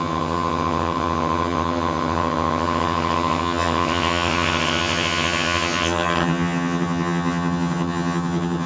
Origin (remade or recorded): remade